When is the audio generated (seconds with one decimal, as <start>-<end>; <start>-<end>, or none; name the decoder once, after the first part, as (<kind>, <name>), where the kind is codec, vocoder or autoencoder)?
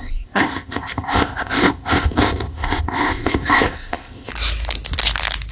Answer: 0.0-4.3 (codec, ZipCodec)